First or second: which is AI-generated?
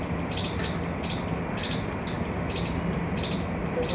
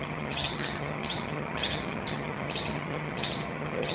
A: second